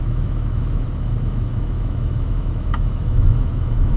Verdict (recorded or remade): remade